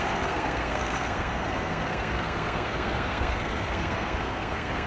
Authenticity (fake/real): fake